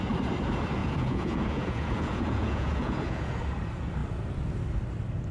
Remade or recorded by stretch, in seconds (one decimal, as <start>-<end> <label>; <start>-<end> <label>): 0.0-0.8 recorded; 0.8-3.3 remade; 3.3-5.3 recorded